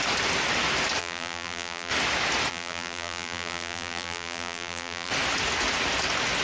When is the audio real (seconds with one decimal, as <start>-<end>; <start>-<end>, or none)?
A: 0.0-1.0; 1.9-2.5; 5.1-6.4